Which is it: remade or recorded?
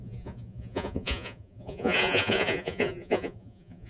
remade